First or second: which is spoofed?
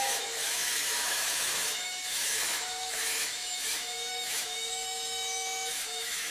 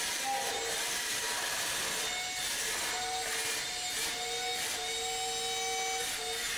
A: first